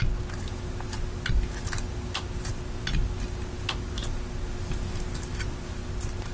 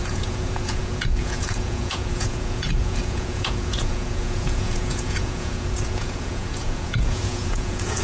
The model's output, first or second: second